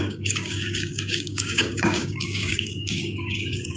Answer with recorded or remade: remade